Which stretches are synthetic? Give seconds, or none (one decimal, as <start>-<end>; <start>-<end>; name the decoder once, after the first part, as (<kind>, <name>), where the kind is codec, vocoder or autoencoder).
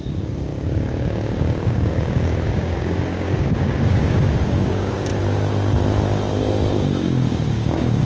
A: 0.0-5.1 (codec, DAC); 6.7-8.1